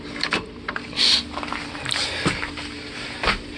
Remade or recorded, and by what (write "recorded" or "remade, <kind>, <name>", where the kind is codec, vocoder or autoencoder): recorded